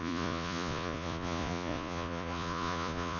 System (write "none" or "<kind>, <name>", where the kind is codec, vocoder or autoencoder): vocoder, Vocos